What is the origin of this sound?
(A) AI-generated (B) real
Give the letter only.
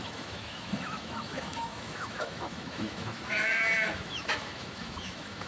A